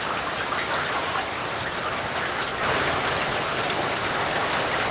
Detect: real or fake real